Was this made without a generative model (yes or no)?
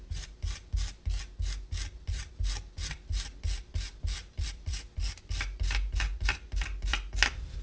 yes